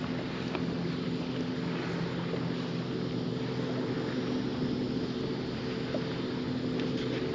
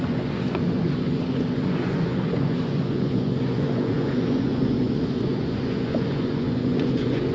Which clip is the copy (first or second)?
second